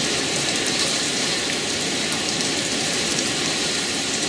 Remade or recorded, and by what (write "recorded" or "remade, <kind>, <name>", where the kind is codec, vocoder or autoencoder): remade, vocoder, BigVGAN v2